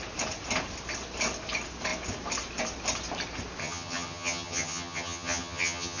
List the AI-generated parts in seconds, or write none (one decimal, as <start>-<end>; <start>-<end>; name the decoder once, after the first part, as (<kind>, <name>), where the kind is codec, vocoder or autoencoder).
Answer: 3.6-6.0 (vocoder, HiFi-GAN)

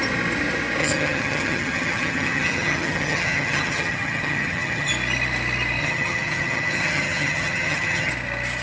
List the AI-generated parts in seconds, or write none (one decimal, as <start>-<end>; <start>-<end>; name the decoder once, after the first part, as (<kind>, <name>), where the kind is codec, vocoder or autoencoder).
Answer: 0.8-4.9 (vocoder, HiFi-GAN); 5.8-8.1

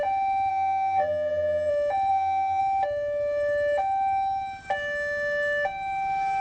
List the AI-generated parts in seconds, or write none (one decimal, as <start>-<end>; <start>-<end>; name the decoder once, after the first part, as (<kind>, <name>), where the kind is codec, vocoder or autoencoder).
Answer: 0.5-1.7 (vocoder, HiFi-GAN); 2.1-2.6

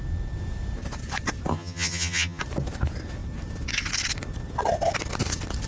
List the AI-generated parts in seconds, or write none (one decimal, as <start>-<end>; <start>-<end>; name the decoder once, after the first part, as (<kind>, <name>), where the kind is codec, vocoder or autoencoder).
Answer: 1.5-2.4 (vocoder, HiFi-GAN)

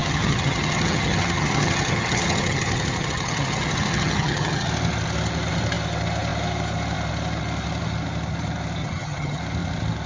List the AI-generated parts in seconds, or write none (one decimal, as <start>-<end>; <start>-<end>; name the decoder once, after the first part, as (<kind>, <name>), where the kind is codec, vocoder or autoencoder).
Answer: 0.0-4.7 (vocoder, HiFi-GAN); 8.8-9.4

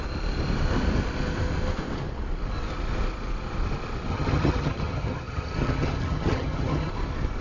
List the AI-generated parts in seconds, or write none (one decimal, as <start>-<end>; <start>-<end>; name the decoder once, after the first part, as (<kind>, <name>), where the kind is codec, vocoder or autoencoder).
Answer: 4.1-6.9 (vocoder, HiFi-GAN)

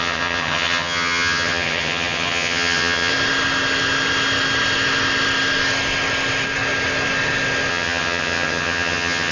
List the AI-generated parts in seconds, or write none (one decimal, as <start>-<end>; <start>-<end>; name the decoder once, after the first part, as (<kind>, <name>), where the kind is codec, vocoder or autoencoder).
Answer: 0.0-3.1 (vocoder, HiFi-GAN); 7.7-9.3

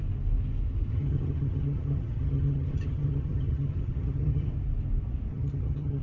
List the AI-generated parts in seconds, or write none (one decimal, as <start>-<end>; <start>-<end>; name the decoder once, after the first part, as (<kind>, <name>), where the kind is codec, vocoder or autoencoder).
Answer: 0.9-4.5 (vocoder, HiFi-GAN); 5.3-6.0